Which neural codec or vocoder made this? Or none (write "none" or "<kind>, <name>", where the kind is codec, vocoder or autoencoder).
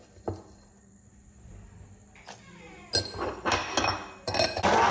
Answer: none